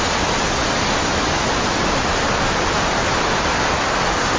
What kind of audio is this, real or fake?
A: real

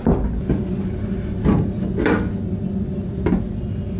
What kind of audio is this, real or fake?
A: real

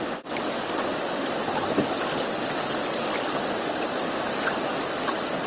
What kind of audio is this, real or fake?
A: real